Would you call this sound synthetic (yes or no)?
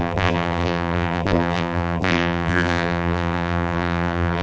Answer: yes